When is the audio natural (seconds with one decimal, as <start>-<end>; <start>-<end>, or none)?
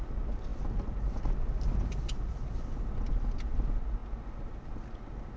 0.0-5.4